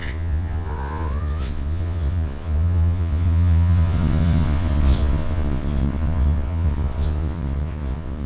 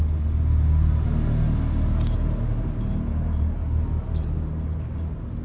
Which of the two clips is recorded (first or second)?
second